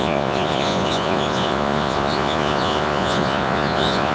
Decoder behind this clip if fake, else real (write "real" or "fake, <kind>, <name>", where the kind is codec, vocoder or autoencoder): fake, vocoder, Vocos